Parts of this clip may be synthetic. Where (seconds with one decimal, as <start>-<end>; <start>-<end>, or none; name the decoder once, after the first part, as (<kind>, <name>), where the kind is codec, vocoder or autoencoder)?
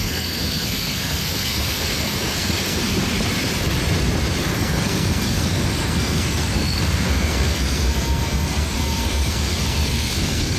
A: 0.0-2.8 (codec, SNAC); 4.4-10.6